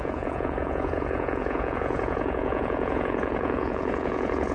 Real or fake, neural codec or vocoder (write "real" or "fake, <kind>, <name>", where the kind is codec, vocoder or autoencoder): fake, vocoder, Vocos